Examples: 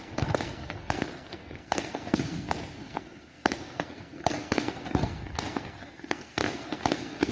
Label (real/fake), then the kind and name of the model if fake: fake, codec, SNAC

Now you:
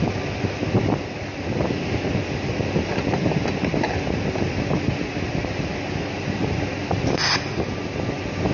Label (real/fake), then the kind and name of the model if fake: real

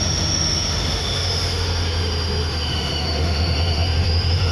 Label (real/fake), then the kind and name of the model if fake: fake, autoencoder, DAC-VAE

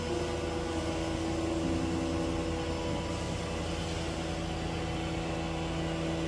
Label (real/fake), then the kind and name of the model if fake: real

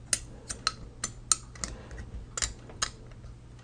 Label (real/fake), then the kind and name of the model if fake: real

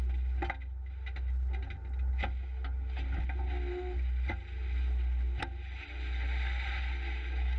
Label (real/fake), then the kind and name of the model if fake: real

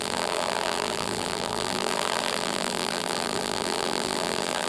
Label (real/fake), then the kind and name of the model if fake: fake, vocoder, BigVGAN v2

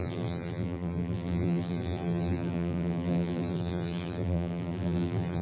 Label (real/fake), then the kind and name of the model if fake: fake, vocoder, BigVGAN v2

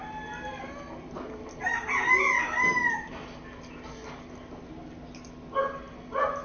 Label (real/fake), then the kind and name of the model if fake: real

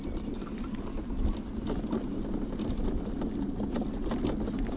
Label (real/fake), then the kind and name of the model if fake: real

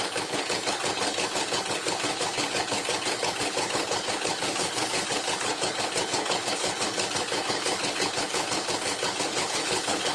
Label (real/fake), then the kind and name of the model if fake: fake, codec, HILCodec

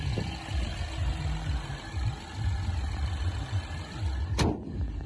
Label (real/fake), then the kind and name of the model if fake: real